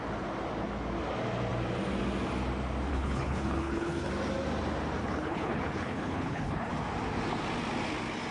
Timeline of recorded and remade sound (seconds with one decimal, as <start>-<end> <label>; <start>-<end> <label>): 0.0-2.9 recorded; 2.9-4.1 remade; 4.1-5.0 recorded; 5.0-6.7 remade; 6.7-8.3 recorded